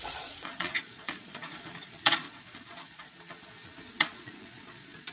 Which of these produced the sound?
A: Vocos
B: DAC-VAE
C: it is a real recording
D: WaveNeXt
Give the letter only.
A